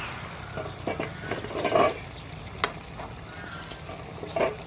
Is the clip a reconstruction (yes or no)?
no